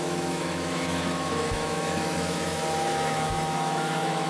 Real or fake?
fake